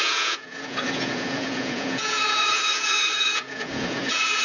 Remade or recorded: remade